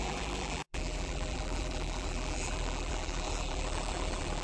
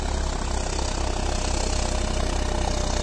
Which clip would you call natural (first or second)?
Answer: second